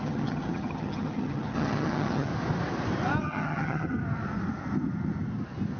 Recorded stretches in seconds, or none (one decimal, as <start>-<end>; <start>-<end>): 2.3-3.2; 4.0-5.8

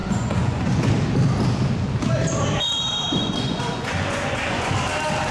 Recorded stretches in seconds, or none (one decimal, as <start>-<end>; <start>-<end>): 0.9-3.1; 4.7-5.3

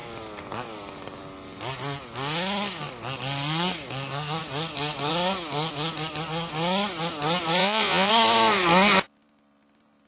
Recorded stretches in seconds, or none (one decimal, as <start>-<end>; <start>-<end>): 0.0-7.6; 8.1-10.1

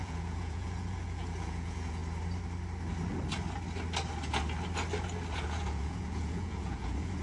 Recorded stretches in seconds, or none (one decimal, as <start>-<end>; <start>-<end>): 2.0-5.3

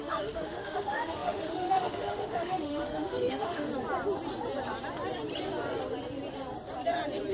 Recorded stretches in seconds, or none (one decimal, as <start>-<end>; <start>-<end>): 3.7-7.3